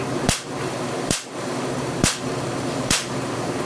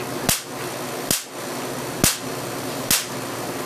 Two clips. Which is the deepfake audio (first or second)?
first